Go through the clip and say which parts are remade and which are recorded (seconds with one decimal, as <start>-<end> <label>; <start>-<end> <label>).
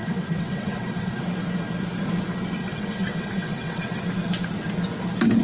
0.0-1.2 remade; 1.2-2.6 recorded; 2.6-4.0 remade; 4.0-5.4 recorded